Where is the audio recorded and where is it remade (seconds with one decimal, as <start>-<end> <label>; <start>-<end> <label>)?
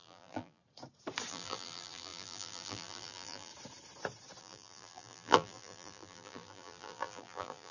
0.0-0.6 remade; 0.6-1.3 recorded; 1.3-3.5 remade; 3.5-4.4 recorded; 4.4-7.7 remade